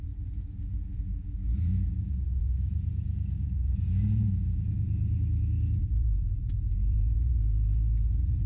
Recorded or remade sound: remade